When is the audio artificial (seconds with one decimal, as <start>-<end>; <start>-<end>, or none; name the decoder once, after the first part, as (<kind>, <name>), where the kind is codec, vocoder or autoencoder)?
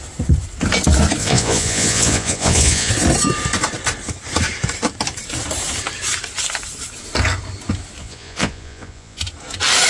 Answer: 1.2-2.9 (vocoder, Vocos); 8.0-9.2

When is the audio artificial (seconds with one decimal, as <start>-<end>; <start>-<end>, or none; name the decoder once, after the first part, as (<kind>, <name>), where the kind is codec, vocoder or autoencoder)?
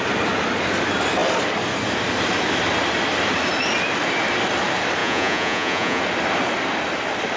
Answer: 5.0-6.0 (vocoder, Vocos)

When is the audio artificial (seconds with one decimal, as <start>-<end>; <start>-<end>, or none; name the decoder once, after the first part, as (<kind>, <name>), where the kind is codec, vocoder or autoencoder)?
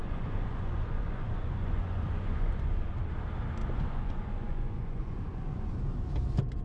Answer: 0.0-2.7 (vocoder, Vocos); 3.6-5.7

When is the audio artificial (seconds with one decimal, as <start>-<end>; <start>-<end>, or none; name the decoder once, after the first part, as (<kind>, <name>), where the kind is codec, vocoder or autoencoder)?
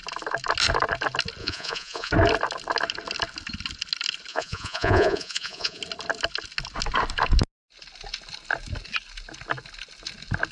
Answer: 1.4-2.1 (vocoder, Vocos); 4.3-5.8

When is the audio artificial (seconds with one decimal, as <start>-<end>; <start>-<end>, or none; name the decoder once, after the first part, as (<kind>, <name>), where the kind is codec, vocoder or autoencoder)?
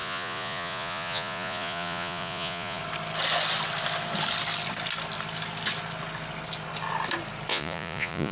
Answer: 0.0-2.8 (vocoder, Vocos); 7.5-8.3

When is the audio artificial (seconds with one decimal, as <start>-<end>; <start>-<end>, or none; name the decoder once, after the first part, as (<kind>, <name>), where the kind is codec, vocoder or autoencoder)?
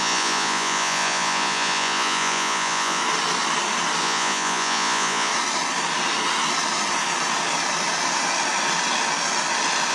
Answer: 0.0-3.0 (vocoder, Vocos); 4.0-5.3